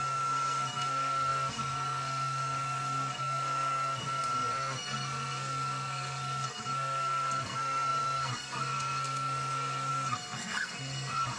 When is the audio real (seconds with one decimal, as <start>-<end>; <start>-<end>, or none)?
none